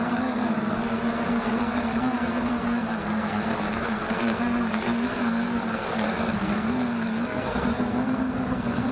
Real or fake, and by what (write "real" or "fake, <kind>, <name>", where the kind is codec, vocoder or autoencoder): fake, codec, SNAC